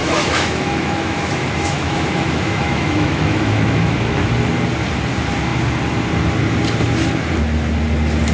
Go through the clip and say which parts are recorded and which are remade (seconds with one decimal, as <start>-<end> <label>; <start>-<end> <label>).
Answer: 0.0-4.3 remade; 4.3-8.3 recorded